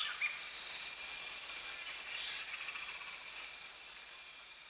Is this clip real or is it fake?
real